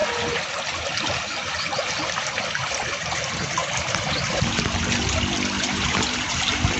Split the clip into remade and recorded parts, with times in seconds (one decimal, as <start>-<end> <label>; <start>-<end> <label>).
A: 0.0-6.8 recorded